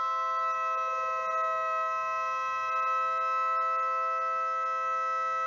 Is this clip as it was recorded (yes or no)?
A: yes